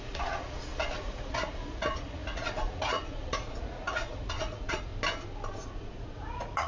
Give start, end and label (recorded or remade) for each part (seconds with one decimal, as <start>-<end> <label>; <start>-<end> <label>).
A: 0.0-4.9 remade; 4.9-5.6 recorded; 5.6-6.7 remade